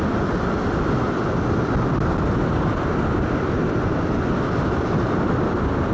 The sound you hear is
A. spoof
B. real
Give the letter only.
B